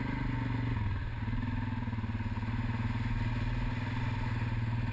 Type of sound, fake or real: real